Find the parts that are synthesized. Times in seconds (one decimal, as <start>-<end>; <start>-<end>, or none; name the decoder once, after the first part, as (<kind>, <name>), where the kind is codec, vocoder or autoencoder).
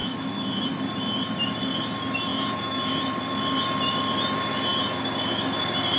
0.0-0.7 (autoencoder, DAC-VAE); 2.3-2.9